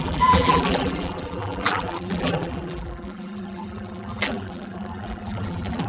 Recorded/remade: remade